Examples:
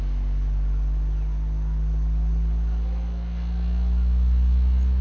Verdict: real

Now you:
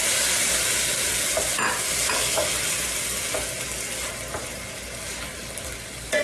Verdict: real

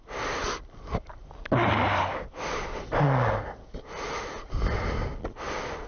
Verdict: real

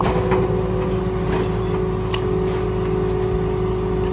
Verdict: real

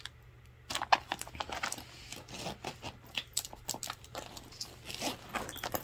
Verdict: real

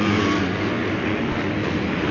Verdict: real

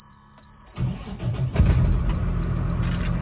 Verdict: fake